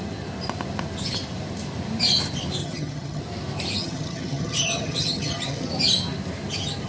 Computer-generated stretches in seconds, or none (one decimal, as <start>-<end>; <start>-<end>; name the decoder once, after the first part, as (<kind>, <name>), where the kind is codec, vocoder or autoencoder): 2.6-3.2 (vocoder, HiFi-GAN); 3.8-5.7